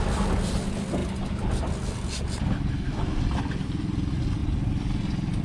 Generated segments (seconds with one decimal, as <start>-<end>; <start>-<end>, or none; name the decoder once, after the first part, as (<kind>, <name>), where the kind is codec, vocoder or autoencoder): none